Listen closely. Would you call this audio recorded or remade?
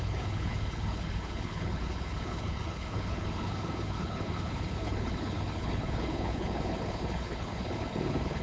remade